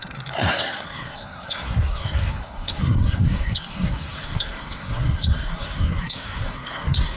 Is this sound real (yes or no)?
no